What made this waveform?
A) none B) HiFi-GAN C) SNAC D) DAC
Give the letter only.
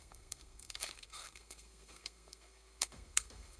C